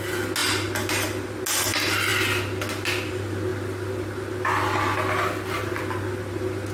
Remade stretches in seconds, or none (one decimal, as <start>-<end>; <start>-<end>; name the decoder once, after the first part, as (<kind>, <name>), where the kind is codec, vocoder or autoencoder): none